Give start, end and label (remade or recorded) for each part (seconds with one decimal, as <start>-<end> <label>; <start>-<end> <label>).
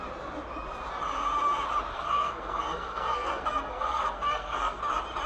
0.0-1.9 recorded; 1.9-4.8 remade; 4.8-5.3 recorded